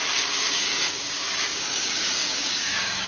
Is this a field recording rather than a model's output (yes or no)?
no